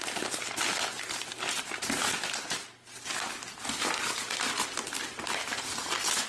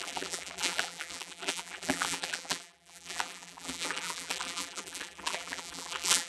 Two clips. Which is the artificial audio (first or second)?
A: second